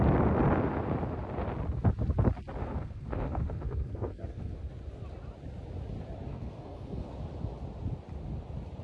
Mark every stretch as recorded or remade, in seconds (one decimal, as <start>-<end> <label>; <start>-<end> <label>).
0.0-2.6 recorded; 2.6-4.5 remade; 4.5-6.3 recorded; 6.3-7.1 remade; 7.1-8.8 recorded